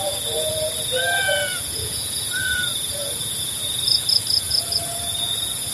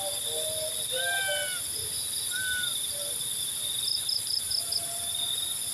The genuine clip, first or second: second